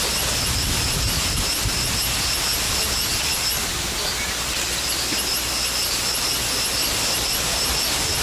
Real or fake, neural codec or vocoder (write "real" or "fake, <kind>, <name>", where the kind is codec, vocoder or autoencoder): real